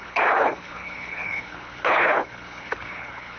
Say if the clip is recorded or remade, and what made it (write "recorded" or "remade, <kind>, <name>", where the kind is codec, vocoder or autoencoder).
remade, codec, HILCodec